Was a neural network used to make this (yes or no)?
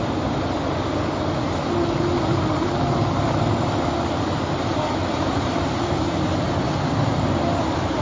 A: no